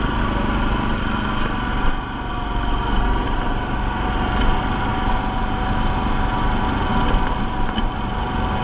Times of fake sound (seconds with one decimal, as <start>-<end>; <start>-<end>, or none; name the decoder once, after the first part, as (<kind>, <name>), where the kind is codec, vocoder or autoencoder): none